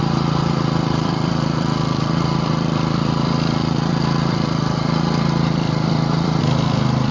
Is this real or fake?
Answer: fake